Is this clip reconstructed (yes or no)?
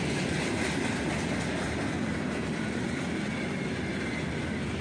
no